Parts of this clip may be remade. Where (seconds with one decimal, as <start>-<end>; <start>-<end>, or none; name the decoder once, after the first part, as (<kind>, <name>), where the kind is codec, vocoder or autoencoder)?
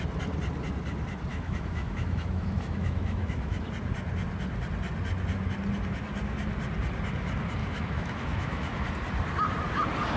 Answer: 1.3-3.6 (autoencoder, DAC-VAE); 7.6-8.9